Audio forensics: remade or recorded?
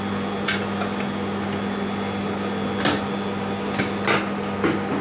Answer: recorded